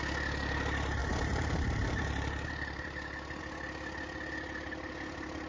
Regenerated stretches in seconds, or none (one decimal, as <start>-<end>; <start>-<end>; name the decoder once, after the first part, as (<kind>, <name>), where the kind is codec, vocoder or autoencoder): 1.0-3.4 (vocoder, BigVGAN v2)